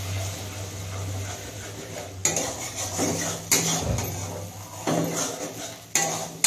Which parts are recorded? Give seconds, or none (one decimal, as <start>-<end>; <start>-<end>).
0.0-6.5